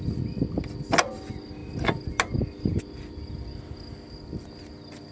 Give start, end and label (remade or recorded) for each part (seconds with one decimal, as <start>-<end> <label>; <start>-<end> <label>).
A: 0.0-5.1 recorded